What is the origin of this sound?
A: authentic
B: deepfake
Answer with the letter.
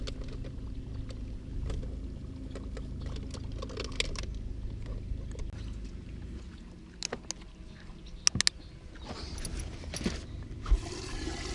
A